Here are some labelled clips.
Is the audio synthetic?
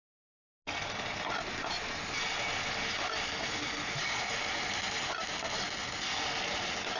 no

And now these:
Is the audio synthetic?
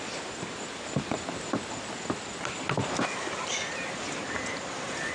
yes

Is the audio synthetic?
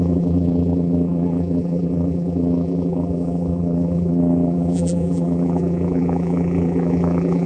yes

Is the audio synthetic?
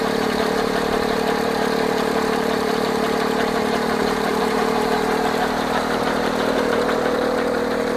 yes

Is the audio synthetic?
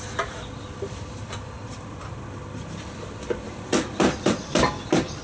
yes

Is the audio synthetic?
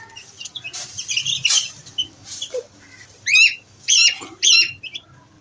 yes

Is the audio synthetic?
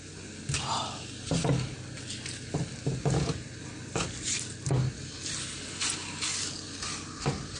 no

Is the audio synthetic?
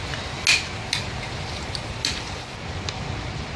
no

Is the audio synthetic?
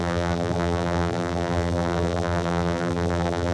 yes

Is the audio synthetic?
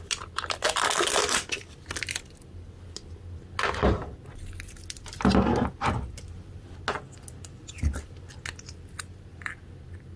no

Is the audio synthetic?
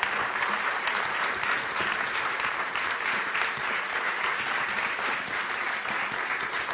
yes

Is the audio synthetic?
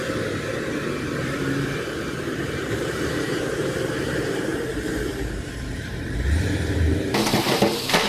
yes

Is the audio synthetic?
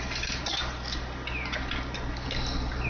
no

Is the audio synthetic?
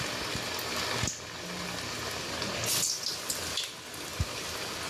no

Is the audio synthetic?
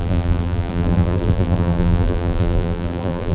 yes